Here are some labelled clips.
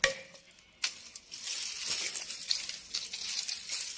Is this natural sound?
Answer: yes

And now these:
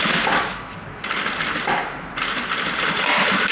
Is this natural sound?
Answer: yes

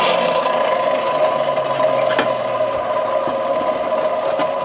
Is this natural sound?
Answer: yes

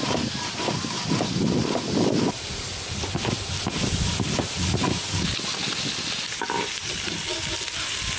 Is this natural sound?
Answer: yes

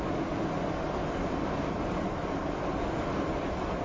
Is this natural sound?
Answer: yes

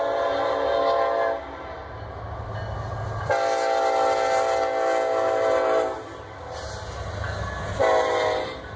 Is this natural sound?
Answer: yes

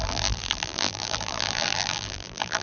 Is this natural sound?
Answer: no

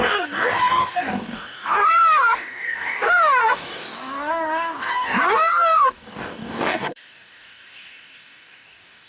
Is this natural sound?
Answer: no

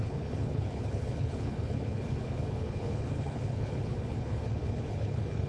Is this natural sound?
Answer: no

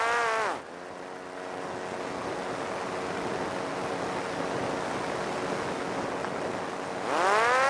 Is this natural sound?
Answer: yes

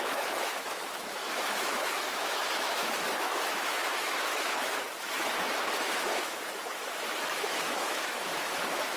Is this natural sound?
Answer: no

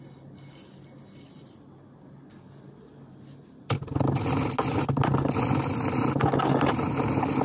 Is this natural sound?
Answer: yes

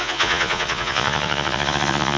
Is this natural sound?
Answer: no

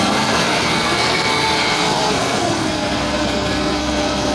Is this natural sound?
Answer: no